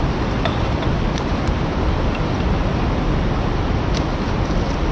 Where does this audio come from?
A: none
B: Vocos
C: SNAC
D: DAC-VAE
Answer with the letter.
A